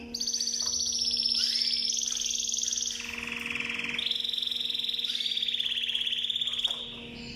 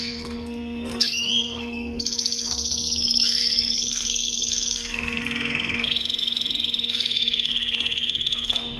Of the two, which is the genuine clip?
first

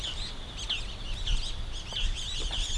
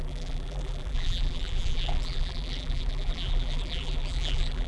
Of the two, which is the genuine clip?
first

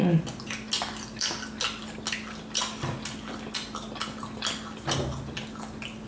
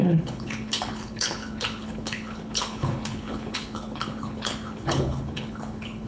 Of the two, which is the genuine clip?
first